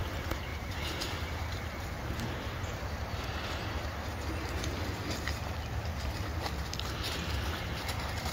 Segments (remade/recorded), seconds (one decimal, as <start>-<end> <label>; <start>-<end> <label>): 0.0-0.5 recorded; 0.5-3.2 remade; 3.2-8.3 recorded